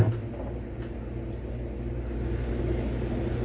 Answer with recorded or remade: recorded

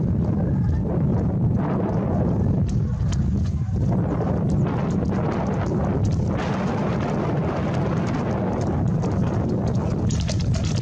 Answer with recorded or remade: recorded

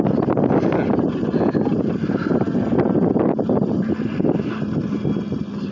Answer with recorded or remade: recorded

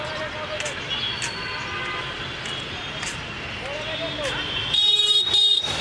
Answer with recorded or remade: recorded